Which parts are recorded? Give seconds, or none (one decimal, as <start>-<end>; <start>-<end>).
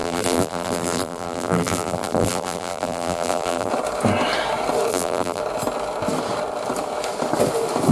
3.7-4.9; 5.4-7.9